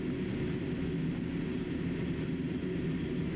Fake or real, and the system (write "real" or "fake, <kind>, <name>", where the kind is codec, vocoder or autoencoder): real